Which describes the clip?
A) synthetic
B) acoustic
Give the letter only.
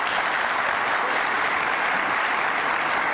B